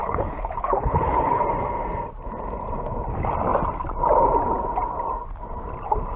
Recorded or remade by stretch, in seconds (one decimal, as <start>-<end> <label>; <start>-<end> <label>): 0.0-1.4 remade; 1.4-6.2 recorded